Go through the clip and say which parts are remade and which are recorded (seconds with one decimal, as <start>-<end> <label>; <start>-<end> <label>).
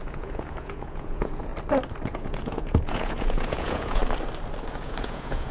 0.0-1.5 remade; 1.5-2.1 recorded; 2.1-4.0 remade; 4.0-4.7 recorded; 4.7-5.5 remade